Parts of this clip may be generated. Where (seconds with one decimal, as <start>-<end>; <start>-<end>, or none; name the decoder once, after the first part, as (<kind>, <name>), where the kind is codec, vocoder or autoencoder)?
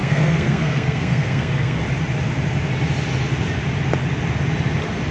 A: 0.0-1.8 (codec, SNAC)